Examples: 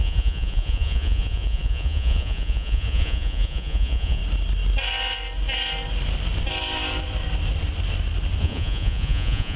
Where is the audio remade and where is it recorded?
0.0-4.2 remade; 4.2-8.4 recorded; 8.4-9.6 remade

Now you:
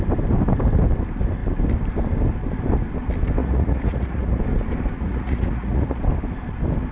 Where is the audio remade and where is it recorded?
0.0-3.4 recorded; 3.4-4.4 remade; 4.4-5.0 recorded; 5.0-6.0 remade; 6.0-6.9 recorded

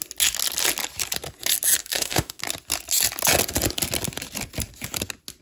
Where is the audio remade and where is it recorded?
0.0-1.8 recorded; 1.8-2.4 remade; 2.4-5.4 recorded

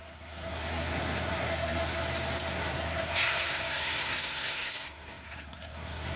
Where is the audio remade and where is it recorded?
0.0-2.0 remade; 2.0-2.5 recorded; 2.5-6.2 remade

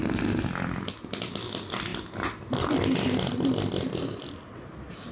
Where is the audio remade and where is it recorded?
0.0-5.1 recorded

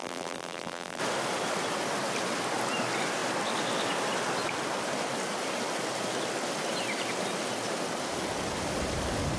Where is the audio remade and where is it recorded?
0.0-1.0 remade; 1.0-9.4 recorded

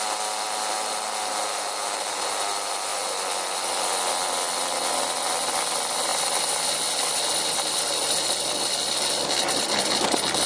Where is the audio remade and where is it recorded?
0.0-10.5 recorded

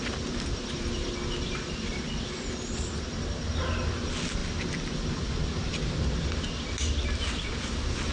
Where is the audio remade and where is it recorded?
0.0-8.1 recorded